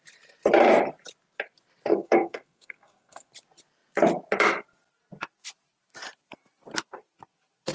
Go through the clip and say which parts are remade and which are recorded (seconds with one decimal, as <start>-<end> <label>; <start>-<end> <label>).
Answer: 0.0-1.9 recorded; 1.9-3.3 remade; 3.3-7.7 recorded